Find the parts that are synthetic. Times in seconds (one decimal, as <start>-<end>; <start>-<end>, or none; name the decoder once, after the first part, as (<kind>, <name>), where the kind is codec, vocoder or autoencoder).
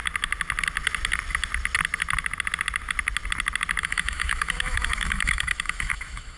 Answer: 3.8-6.4 (autoencoder, DAC-VAE)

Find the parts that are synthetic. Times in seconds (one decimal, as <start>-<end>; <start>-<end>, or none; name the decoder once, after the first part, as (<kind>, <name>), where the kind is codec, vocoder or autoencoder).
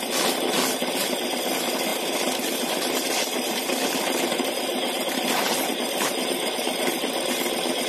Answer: none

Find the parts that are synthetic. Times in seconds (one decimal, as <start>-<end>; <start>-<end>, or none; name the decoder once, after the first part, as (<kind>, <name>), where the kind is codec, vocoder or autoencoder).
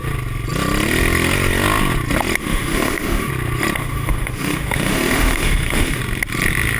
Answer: 2.4-3.3 (autoencoder, DAC-VAE); 3.8-6.0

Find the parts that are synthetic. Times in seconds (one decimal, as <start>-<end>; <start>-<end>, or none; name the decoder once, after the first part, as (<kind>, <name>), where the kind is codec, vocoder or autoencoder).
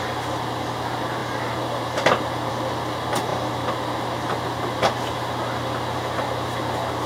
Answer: none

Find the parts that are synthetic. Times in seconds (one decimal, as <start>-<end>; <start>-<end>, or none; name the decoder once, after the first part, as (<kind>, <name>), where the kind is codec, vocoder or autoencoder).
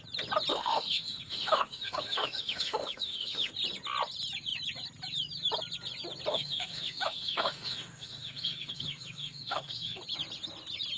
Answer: 0.5-3.5 (autoencoder, DAC-VAE); 6.3-10.0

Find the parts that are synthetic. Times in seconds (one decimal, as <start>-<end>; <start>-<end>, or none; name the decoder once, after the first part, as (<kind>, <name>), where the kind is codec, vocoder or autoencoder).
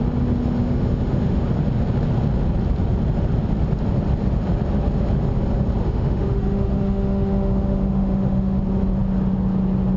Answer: 0.6-1.4 (autoencoder, DAC-VAE); 5.8-8.6